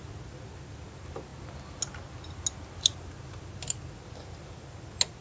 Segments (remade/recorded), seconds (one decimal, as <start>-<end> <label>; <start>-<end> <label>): 0.0-5.2 recorded